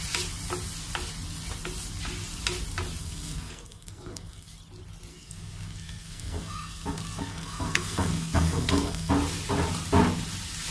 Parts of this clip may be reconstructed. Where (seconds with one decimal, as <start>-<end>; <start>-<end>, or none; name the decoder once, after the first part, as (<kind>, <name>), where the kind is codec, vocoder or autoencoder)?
3.0-4.5 (codec, SNAC); 5.1-9.1